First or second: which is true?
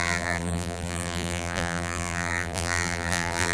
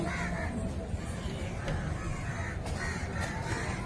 second